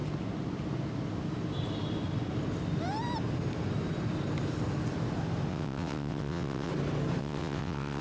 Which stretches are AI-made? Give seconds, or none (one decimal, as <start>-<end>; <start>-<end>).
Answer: 5.5-6.7; 7.2-8.0